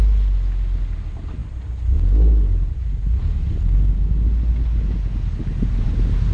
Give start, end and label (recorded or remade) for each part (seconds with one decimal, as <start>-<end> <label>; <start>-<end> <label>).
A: 0.0-6.3 recorded